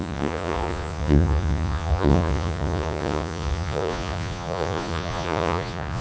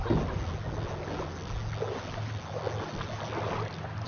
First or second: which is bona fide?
second